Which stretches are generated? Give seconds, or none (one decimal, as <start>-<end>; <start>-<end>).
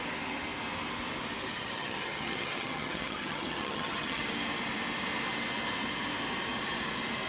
1.5-4.2